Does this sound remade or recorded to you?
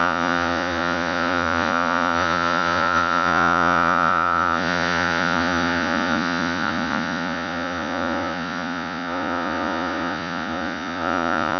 remade